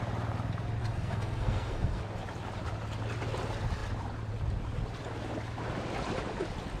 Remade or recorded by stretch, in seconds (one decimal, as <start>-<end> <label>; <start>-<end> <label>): 0.0-0.8 recorded; 0.8-2.0 remade; 2.0-6.8 recorded